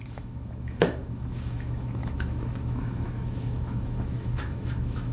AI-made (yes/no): yes